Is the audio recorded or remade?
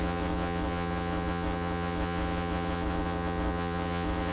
remade